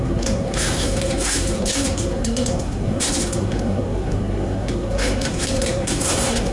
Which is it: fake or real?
fake